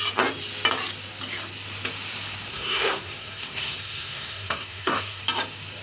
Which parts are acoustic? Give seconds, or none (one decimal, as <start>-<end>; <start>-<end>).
0.0-2.5; 5.2-5.8